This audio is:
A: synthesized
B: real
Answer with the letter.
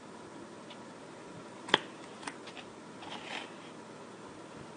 B